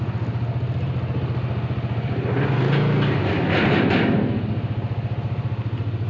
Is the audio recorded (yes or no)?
yes